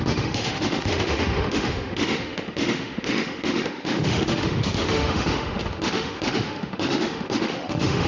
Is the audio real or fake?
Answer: fake